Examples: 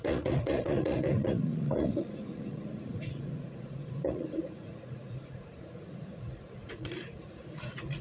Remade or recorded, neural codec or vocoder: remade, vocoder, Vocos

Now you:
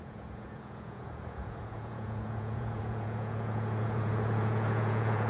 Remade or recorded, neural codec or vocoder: remade, vocoder, Vocos